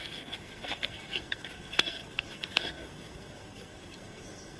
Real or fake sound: fake